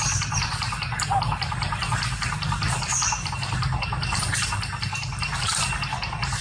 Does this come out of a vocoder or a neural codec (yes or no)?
no